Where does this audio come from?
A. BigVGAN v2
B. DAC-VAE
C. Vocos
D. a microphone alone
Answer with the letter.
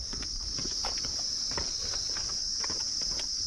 A